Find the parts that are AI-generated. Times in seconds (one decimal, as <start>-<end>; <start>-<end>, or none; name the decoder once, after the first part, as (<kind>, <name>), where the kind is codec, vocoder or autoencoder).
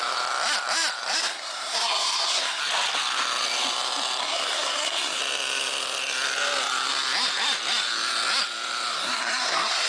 1.2-2.6 (codec, SNAC); 4.2-5.2; 8.9-9.9